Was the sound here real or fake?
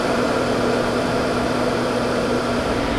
fake